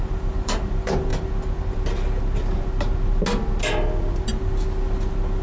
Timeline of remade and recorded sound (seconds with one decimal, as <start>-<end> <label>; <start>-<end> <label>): 0.0-1.1 remade; 1.1-4.3 recorded; 4.3-5.4 remade